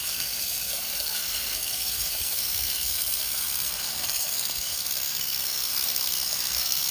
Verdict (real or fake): fake